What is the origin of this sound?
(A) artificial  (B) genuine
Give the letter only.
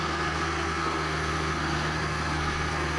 A